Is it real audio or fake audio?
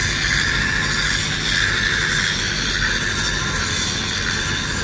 real